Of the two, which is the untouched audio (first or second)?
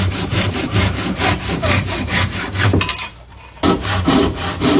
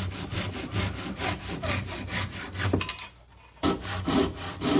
second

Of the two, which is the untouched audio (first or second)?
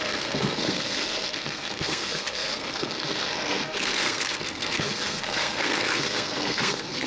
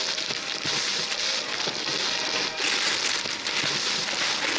second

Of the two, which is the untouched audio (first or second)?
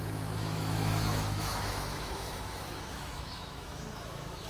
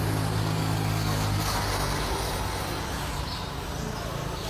second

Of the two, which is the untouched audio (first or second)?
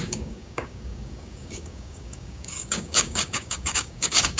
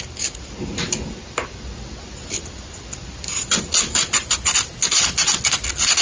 second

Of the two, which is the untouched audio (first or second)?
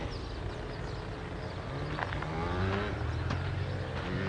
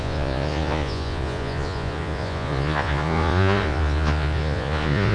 first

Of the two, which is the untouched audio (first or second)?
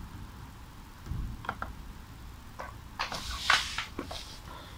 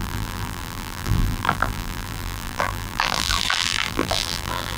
first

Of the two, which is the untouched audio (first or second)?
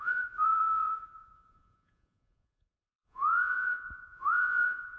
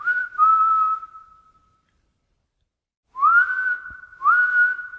second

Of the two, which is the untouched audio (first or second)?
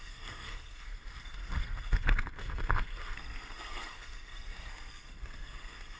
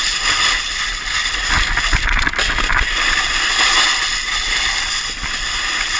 second